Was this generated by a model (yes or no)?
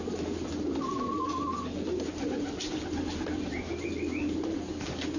no